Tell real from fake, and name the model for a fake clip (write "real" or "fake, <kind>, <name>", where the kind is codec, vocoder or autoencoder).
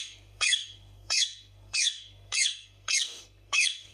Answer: fake, codec, SNAC